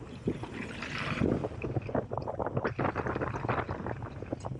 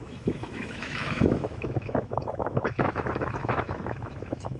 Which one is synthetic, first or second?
second